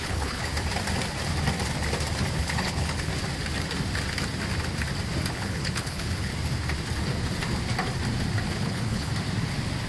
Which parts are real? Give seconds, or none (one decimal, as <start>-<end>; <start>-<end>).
0.5-2.4; 3.1-5.3; 6.3-8.5; 9.1-9.9